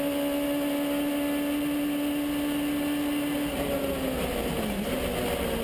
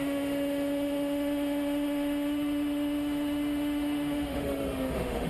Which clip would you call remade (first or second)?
second